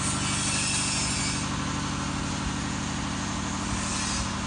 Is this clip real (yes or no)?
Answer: yes